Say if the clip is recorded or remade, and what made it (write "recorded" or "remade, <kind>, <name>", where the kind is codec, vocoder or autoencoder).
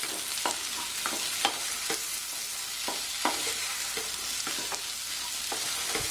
recorded